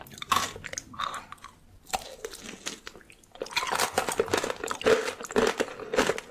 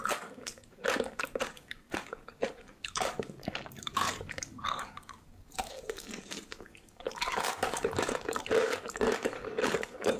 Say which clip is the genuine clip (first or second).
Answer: first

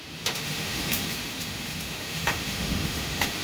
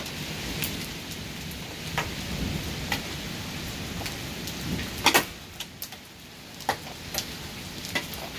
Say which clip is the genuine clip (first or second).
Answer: second